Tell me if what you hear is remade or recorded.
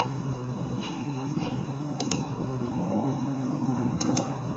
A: remade